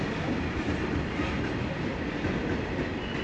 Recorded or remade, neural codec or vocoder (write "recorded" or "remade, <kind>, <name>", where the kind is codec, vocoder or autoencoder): recorded